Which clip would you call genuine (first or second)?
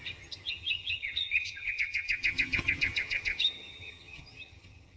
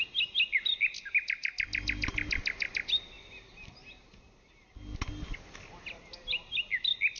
second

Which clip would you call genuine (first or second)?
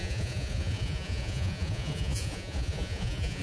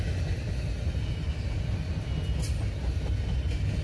second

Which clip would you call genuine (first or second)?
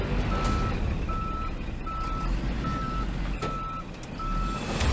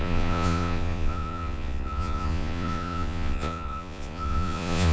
first